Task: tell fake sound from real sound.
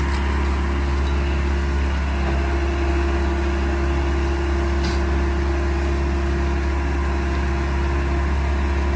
real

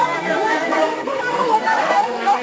fake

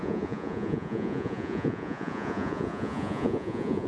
fake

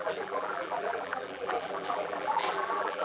fake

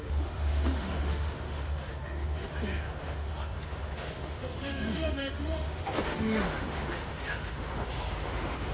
fake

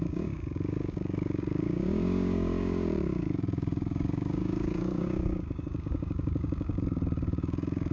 fake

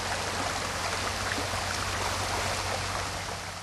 real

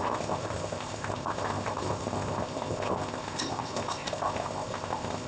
fake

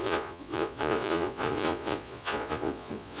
fake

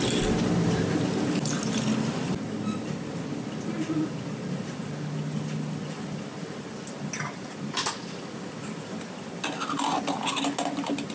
real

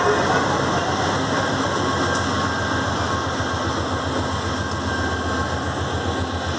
real